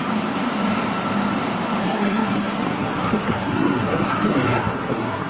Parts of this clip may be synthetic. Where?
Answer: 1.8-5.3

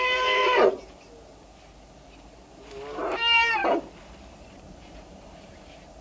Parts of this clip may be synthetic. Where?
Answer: 0.0-0.4; 3.0-3.6; 4.4-6.0

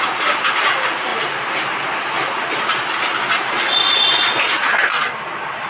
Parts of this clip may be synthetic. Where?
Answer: none

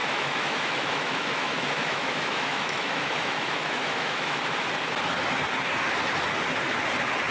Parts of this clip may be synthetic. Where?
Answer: 0.0-4.4

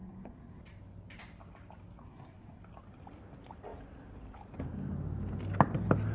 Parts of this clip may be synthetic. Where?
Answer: 0.0-0.6; 2.0-2.6